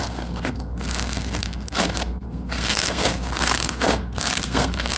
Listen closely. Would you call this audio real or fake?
fake